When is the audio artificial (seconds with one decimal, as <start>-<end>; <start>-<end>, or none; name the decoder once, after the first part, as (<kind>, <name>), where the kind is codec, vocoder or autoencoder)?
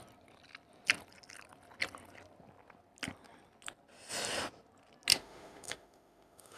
5.1-6.6 (autoencoder, DAC-VAE)